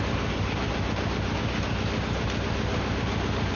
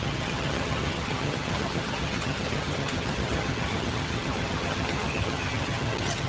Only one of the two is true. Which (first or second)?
first